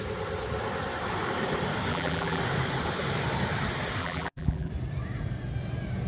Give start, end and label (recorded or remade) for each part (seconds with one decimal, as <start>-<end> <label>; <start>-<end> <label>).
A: 0.0-1.9 recorded; 1.9-2.4 remade; 2.4-4.0 recorded; 4.0-4.7 remade; 4.7-6.1 recorded